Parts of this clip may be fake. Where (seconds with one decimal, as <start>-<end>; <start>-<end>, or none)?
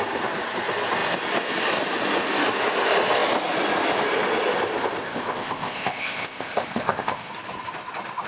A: 5.0-7.3